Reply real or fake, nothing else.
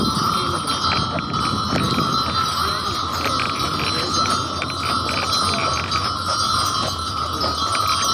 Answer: real